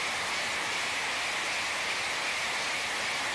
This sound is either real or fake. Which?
real